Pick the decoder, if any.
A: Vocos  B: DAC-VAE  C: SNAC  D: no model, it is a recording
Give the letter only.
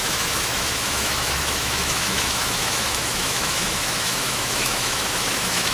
B